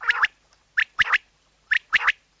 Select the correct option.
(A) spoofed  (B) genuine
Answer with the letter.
B